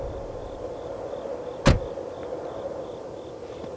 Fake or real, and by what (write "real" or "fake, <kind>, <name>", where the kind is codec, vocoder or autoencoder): real